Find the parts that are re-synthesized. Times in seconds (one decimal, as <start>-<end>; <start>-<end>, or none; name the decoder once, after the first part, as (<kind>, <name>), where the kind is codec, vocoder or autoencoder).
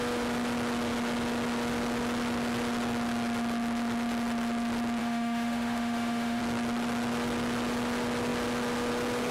5.0-6.4 (autoencoder, DAC-VAE)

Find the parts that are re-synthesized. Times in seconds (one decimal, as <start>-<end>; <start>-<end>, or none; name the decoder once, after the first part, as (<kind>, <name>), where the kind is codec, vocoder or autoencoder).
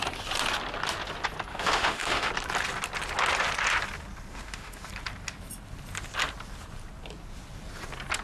1.5-2.3 (autoencoder, DAC-VAE); 4.3-4.9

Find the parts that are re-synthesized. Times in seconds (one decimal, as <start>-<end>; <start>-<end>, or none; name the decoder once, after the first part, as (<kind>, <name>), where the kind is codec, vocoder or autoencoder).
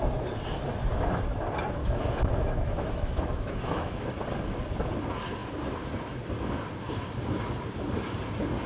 1.8-4.1 (autoencoder, DAC-VAE)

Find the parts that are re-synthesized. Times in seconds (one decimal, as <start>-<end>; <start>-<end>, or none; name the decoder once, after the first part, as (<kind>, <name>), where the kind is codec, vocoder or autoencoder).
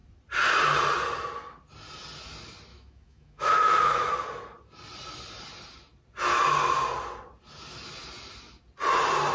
2.7-4.1 (autoencoder, DAC-VAE)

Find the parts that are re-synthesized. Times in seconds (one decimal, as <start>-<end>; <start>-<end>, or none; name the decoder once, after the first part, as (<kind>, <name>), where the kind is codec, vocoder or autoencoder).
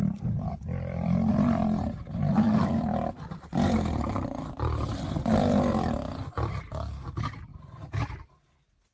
none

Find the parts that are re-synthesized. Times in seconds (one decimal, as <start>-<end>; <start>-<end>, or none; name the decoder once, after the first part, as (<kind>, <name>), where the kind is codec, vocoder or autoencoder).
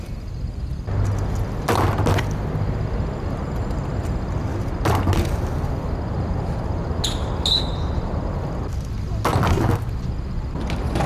none